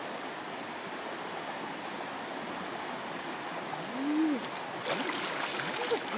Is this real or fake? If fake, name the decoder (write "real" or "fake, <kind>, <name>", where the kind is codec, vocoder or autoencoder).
real